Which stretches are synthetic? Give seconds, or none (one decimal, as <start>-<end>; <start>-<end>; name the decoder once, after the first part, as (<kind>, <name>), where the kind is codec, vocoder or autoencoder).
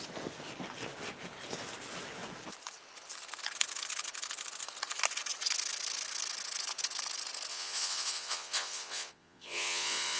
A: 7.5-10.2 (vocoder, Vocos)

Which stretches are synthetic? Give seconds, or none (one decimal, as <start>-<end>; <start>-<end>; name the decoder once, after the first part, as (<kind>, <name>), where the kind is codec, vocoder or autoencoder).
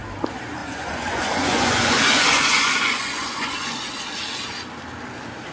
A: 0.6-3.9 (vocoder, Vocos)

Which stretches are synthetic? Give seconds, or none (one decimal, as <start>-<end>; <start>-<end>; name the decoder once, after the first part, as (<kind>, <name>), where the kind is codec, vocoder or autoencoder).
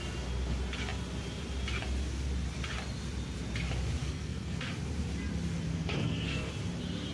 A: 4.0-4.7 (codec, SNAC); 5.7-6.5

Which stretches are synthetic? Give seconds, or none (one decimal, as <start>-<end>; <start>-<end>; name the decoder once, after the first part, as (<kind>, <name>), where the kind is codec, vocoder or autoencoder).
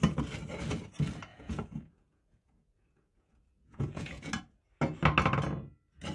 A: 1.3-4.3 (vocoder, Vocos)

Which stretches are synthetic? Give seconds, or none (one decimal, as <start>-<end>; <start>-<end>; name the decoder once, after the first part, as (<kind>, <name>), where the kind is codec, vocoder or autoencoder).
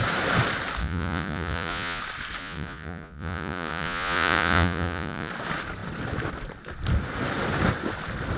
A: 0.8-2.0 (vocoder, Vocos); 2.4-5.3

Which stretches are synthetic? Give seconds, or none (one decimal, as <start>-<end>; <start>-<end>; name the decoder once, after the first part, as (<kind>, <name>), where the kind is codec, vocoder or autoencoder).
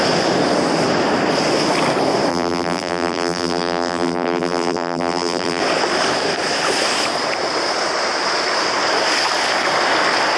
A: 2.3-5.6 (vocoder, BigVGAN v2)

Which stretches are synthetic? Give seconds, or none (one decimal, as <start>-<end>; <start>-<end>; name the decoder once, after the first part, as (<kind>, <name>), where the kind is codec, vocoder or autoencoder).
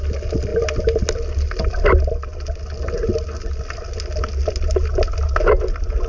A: none